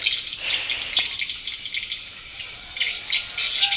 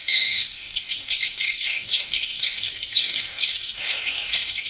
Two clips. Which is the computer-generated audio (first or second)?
second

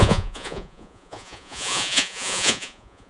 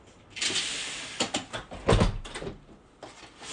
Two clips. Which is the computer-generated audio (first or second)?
first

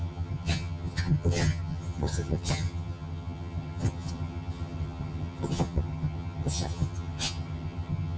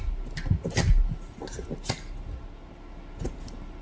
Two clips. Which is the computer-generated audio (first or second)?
first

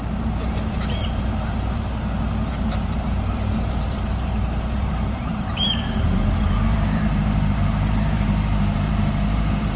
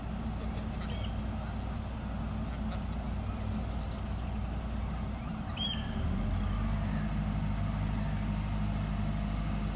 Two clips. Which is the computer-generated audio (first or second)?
first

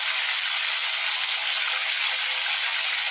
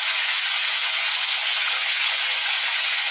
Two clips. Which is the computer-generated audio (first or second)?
second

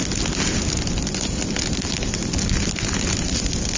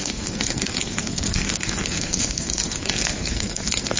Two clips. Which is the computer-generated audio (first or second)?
second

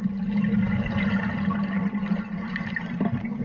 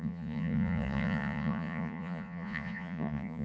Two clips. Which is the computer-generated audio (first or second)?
second